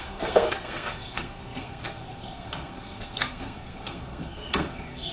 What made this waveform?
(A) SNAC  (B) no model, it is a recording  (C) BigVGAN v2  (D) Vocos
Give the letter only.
A